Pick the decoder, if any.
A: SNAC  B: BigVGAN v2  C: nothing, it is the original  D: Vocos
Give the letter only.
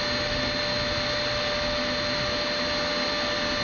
C